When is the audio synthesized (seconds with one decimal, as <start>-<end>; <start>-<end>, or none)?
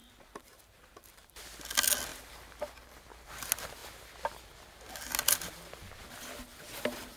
0.0-1.4; 2.1-3.3